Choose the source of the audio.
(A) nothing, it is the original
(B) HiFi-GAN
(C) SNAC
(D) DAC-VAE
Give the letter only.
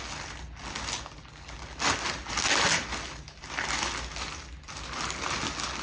A